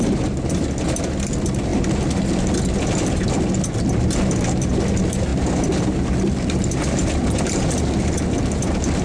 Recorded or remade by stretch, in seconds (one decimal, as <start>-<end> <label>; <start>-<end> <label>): 0.0-9.0 recorded